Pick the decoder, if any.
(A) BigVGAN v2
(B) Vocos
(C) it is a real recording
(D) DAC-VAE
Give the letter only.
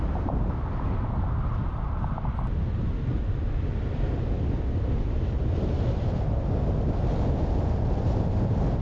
C